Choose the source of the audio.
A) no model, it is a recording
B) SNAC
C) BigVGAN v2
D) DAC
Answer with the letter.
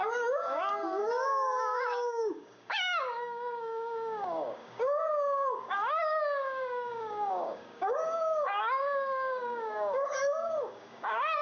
D